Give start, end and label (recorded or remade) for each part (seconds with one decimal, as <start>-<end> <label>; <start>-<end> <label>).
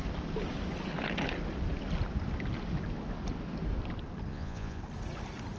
0.0-4.3 recorded; 4.3-4.8 remade; 4.8-5.6 recorded